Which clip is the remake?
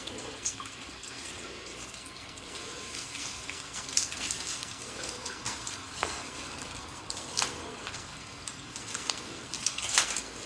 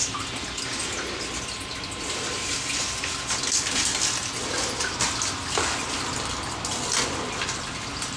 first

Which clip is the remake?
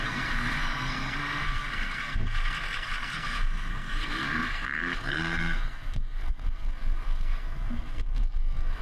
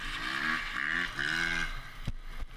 first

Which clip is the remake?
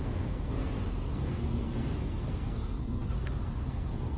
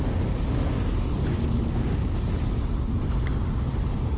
first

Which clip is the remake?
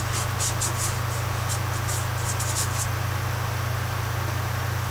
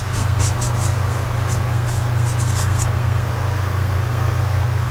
second